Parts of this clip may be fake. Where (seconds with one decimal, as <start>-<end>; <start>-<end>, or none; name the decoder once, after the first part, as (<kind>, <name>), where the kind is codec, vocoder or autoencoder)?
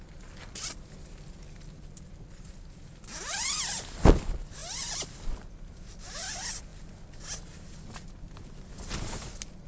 none